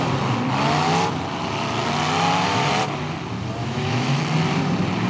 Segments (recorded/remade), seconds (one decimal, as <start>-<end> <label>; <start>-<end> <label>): 0.0-3.6 recorded; 3.6-4.2 remade; 4.2-5.1 recorded